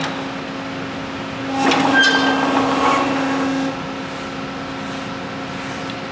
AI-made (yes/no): no